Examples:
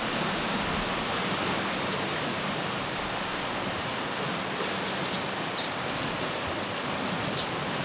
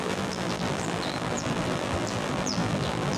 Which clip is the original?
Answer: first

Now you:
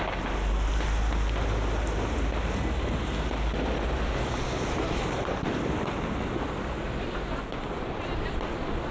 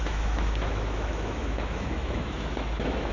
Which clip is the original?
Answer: first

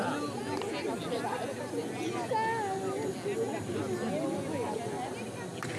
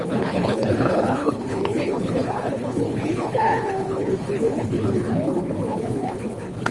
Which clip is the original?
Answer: first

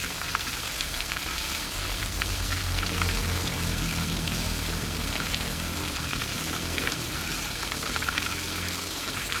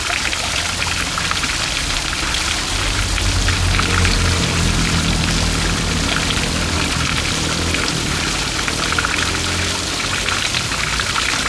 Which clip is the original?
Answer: second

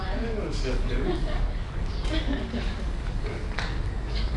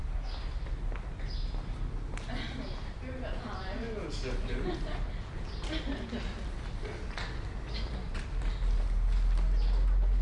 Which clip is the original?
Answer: second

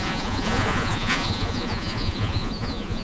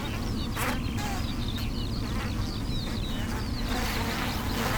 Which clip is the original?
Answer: second